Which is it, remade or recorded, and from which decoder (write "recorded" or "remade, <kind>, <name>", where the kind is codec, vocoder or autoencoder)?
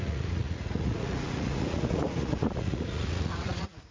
remade, vocoder, Vocos